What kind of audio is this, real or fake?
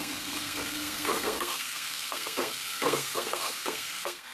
fake